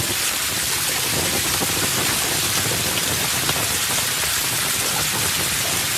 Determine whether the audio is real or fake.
fake